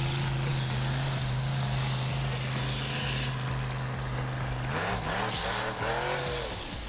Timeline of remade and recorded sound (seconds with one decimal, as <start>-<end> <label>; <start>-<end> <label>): 0.0-6.9 recorded